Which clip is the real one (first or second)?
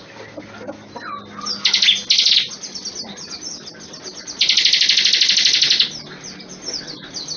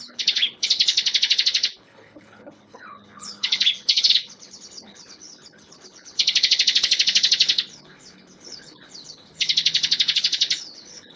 first